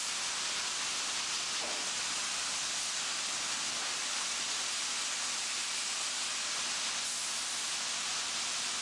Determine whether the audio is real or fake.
real